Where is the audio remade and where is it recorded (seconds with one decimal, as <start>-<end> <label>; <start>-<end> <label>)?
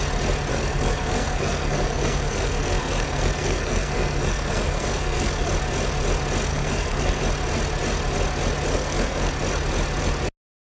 0.0-0.5 recorded; 0.5-5.5 remade; 5.5-6.5 recorded; 6.5-7.2 remade; 7.2-8.7 recorded; 8.7-9.3 remade; 9.3-10.6 recorded